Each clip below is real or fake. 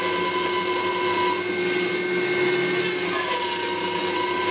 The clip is real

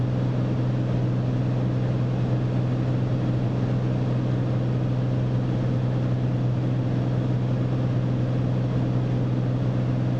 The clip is real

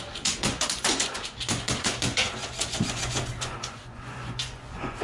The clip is fake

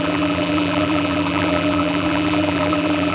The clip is fake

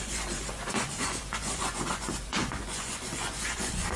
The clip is fake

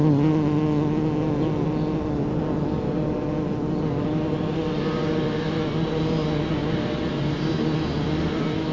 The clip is real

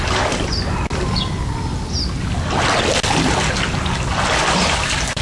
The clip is real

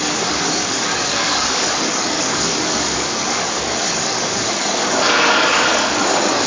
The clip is fake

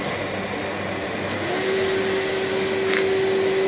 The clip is real